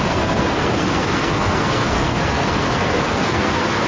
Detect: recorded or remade remade